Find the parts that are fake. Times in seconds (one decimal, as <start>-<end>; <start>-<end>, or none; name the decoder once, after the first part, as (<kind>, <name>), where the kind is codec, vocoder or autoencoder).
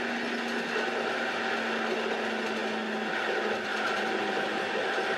3.7-4.6 (vocoder, BigVGAN v2)